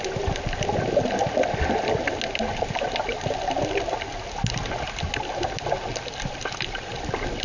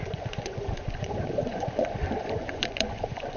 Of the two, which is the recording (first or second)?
first